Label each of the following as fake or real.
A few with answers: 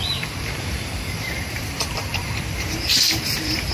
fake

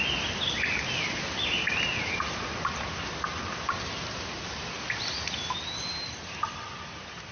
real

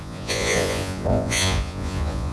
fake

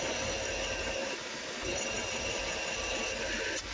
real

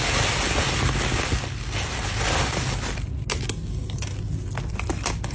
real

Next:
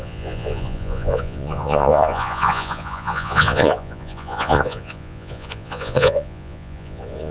fake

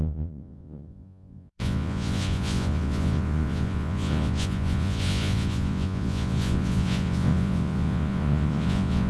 fake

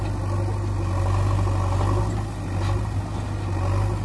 real